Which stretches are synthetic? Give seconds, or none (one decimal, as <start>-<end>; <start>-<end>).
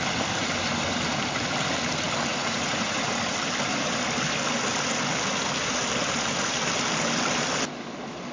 2.3-3.1